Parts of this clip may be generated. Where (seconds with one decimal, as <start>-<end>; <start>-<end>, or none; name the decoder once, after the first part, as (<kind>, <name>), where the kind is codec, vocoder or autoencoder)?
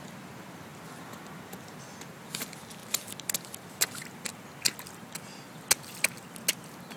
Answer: none